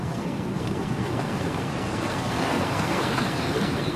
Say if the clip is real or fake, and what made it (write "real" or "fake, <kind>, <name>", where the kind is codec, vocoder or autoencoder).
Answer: fake, codec, SNAC